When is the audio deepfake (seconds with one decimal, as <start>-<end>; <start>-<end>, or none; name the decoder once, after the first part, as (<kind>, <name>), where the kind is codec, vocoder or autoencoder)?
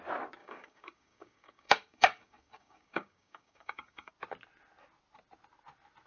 0.4-4.1 (codec, DAC)